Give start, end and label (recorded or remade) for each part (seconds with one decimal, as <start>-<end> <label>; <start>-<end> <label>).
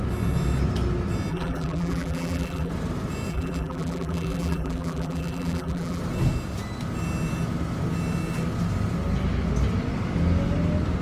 0.0-1.3 recorded; 1.3-2.7 remade; 2.7-3.3 recorded; 3.3-6.0 remade; 6.0-11.0 recorded